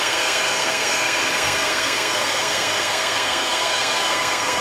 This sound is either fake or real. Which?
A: fake